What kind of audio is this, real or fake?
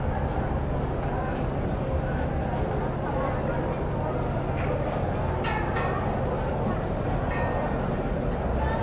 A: real